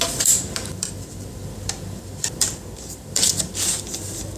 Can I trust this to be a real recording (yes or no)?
no